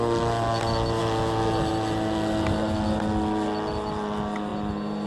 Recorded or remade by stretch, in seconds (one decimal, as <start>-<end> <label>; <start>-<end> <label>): 0.0-5.1 recorded

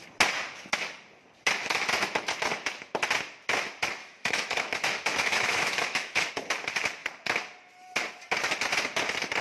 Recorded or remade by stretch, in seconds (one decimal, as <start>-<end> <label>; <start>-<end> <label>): 0.0-4.0 recorded; 4.0-6.3 remade; 6.3-9.4 recorded

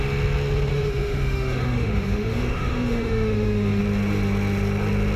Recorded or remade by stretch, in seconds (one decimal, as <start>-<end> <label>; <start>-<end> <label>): 0.0-0.7 recorded; 0.7-3.8 remade; 3.8-5.2 recorded